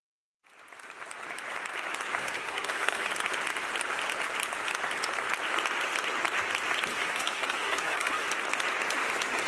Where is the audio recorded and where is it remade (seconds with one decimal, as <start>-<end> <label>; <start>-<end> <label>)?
0.0-2.2 recorded; 2.2-3.1 remade; 3.1-6.9 recorded; 6.9-8.3 remade; 8.3-9.5 recorded